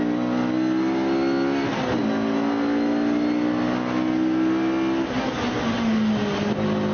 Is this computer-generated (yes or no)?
no